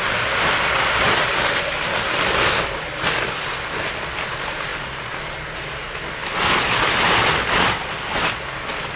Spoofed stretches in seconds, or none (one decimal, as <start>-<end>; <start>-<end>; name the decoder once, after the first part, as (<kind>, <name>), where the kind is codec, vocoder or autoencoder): 0.0-2.3 (vocoder, BigVGAN v2)